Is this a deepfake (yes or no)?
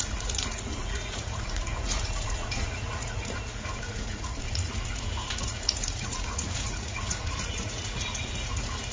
yes